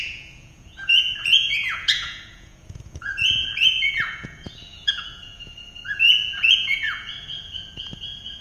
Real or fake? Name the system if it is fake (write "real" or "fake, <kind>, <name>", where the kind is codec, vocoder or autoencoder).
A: fake, vocoder, Vocos